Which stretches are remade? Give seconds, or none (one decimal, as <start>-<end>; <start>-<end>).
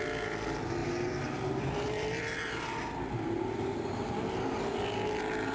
0.8-4.1